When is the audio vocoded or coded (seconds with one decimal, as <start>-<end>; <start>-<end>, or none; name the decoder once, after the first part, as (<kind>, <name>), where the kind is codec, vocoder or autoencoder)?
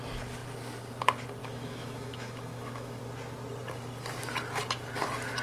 1.4-3.0 (autoencoder, DAC-VAE)